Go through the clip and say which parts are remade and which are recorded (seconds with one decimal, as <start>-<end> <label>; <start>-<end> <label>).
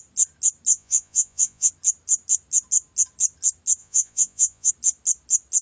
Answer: 0.0-0.7 recorded; 0.7-1.7 remade; 1.7-3.8 recorded; 3.8-4.7 remade; 4.7-5.6 recorded